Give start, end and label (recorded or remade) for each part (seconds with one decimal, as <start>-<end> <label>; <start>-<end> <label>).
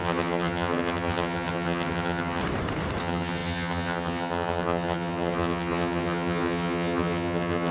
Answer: 0.0-2.4 remade; 2.4-3.0 recorded; 3.0-7.7 remade